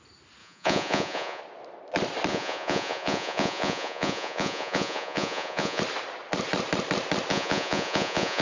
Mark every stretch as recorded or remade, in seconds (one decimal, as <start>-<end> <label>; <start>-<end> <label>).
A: 0.0-0.4 recorded; 0.4-1.4 remade; 1.4-2.3 recorded; 2.3-5.8 remade; 5.8-7.3 recorded; 7.3-8.4 remade